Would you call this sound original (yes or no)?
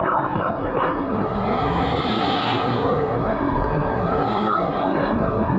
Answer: no